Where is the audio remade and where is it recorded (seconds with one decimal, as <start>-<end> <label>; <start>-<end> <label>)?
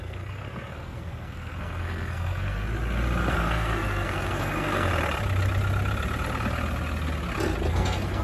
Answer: 0.0-2.7 remade; 2.7-3.3 recorded; 3.3-4.9 remade; 4.9-7.7 recorded; 7.7-8.2 remade